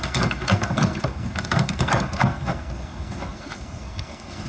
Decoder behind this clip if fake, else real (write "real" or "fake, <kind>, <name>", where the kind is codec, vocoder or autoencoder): fake, codec, SNAC